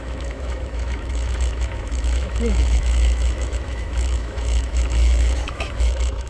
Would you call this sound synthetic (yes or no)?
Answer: yes